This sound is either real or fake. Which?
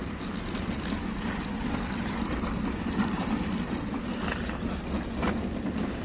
real